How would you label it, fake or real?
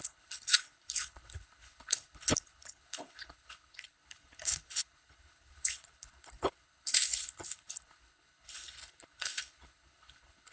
fake